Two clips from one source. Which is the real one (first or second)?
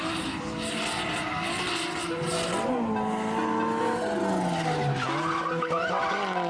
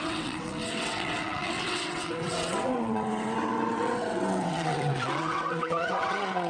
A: first